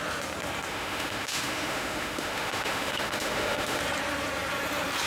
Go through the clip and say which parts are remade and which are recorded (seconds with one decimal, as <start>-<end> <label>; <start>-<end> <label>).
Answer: 0.0-0.7 recorded; 0.7-3.8 remade; 3.8-5.1 recorded